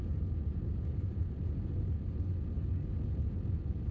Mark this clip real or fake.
real